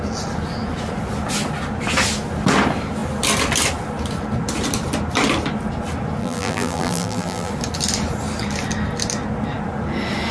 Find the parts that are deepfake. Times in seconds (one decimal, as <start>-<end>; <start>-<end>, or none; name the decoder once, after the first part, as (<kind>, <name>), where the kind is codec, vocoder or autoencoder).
6.2-7.5 (vocoder, BigVGAN v2)

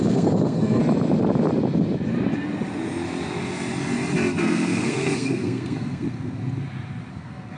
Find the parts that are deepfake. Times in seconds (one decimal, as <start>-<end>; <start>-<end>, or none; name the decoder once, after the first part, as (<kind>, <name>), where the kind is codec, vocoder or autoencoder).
0.0-0.8 (codec, SNAC); 4.4-6.4; 7.1-7.6

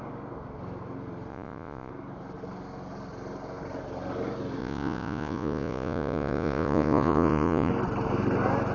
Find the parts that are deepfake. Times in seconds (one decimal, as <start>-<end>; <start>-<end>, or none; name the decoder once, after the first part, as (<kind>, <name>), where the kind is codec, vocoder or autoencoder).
1.3-1.9 (vocoder, Vocos); 4.6-7.7

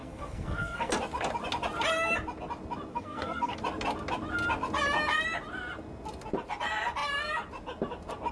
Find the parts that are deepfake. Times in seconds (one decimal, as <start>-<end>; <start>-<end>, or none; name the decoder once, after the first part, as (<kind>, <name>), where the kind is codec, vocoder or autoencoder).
0.0-0.9 (codec, SNAC); 2.9-3.6

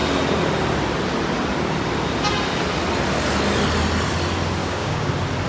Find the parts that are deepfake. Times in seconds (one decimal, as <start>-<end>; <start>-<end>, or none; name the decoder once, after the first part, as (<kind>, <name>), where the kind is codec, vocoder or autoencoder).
4.6-5.1 (codec, DAC)

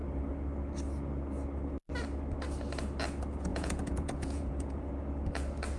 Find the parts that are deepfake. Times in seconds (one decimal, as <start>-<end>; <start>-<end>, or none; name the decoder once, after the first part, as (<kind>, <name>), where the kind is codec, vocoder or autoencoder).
3.5-4.9 (vocoder, Vocos)

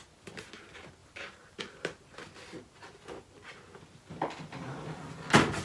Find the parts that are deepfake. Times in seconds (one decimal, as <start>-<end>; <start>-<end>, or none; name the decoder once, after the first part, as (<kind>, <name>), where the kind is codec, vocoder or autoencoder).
none

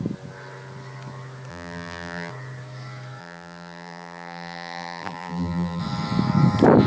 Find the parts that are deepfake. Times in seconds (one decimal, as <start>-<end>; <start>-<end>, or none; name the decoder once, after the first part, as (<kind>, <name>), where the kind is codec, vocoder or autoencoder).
1.5-2.3 (vocoder, BigVGAN v2); 3.2-5.8